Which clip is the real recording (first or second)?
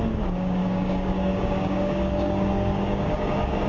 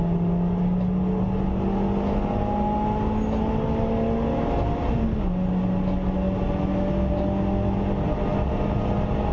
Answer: second